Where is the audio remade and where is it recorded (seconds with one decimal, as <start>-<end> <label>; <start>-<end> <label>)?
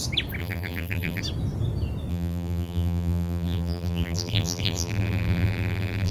0.0-0.4 recorded; 0.4-1.2 remade; 1.2-2.1 recorded; 2.1-6.1 remade